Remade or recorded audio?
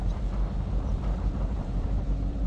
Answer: remade